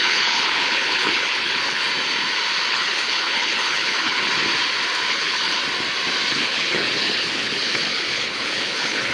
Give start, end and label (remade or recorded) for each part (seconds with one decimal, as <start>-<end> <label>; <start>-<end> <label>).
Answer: 0.0-1.8 remade; 1.8-2.7 recorded; 2.7-4.3 remade; 4.3-5.1 recorded; 5.1-5.6 remade; 5.6-6.3 recorded; 6.3-9.1 remade